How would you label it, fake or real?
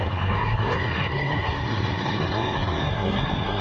fake